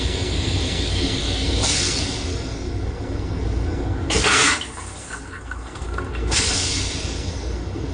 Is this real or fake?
fake